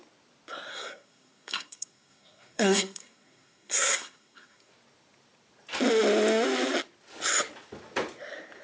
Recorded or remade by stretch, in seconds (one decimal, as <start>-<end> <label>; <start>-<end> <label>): 0.0-0.7 recorded; 0.7-4.7 remade; 4.7-8.6 recorded